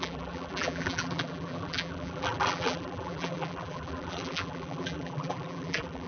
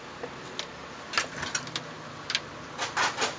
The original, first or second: second